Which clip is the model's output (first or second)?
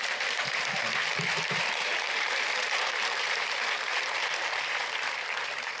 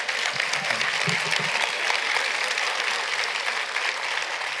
first